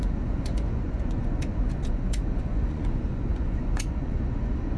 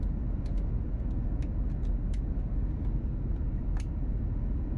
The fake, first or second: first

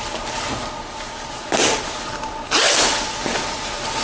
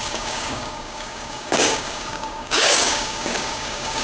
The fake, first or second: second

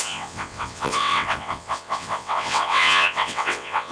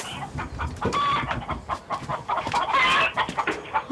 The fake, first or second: first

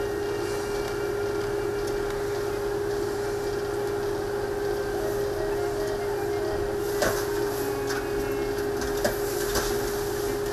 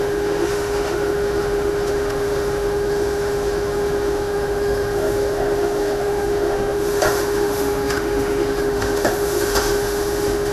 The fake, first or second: second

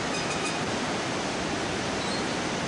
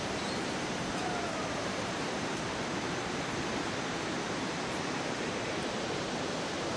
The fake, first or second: second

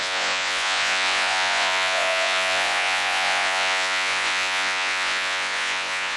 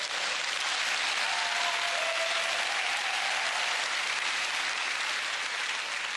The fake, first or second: first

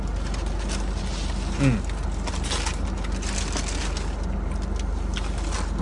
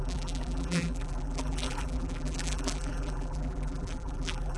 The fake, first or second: second